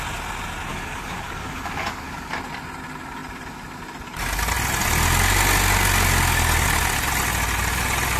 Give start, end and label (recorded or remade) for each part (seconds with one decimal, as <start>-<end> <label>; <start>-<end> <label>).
0.0-0.7 recorded; 0.7-2.3 remade; 2.3-8.2 recorded